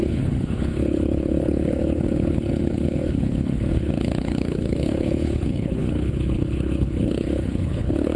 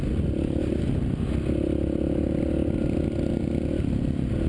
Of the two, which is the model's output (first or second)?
first